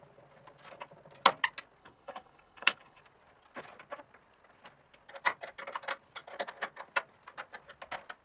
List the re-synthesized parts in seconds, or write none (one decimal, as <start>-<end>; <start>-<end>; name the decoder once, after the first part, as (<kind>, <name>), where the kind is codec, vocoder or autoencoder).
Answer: 1.8-3.0 (codec, HILCodec)